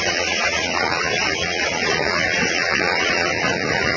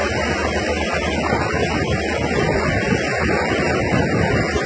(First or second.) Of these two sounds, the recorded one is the second